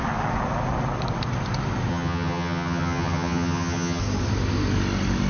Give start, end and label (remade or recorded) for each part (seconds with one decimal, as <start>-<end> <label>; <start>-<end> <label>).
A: 0.0-1.9 recorded; 1.9-4.0 remade; 4.0-5.3 recorded